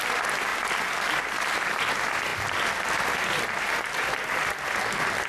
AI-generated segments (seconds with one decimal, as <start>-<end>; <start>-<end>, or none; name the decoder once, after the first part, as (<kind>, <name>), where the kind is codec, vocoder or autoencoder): none